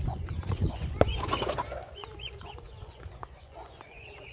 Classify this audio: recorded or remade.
remade